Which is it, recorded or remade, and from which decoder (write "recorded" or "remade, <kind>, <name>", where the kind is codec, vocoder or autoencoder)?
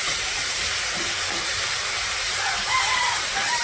remade, vocoder, BigVGAN v2